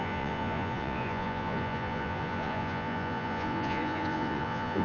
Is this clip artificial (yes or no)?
yes